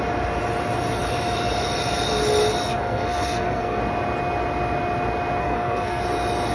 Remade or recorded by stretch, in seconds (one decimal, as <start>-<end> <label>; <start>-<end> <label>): 0.0-2.7 recorded; 2.7-3.8 remade; 3.8-5.4 recorded; 5.4-6.0 remade; 6.0-6.5 recorded

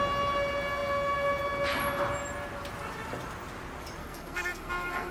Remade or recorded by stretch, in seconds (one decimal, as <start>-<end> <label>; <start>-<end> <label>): 0.0-4.0 recorded; 4.0-5.1 remade

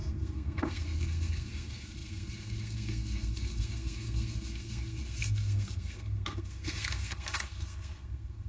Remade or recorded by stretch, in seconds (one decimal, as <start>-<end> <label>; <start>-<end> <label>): 0.0-8.5 remade

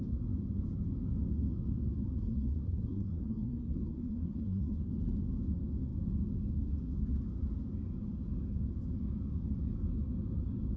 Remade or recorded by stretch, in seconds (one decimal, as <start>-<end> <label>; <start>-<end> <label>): 0.0-2.2 recorded; 2.2-4.9 remade; 4.9-10.8 recorded

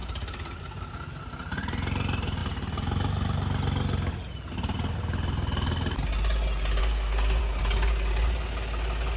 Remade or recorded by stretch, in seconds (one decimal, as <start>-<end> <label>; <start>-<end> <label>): 0.0-6.8 recorded; 6.8-7.4 remade; 7.4-9.2 recorded

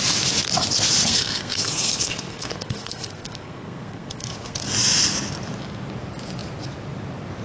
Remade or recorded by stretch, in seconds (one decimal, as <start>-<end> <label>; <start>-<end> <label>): 0.0-1.0 recorded; 1.0-4.6 remade; 4.6-7.4 recorded

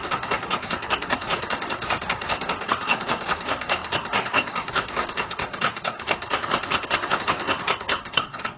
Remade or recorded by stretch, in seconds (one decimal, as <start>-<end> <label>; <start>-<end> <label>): 0.0-8.6 remade